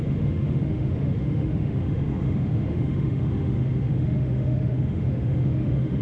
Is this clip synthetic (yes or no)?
yes